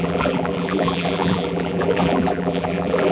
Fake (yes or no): yes